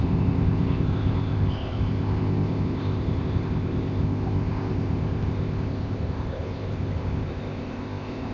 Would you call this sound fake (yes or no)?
yes